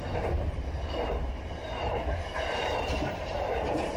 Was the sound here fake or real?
fake